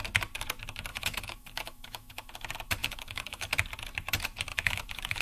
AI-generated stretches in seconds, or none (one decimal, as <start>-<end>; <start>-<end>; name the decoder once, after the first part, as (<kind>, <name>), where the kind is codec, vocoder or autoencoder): 0.9-2.3 (autoencoder, DAC-VAE); 2.8-3.5; 4.5-5.2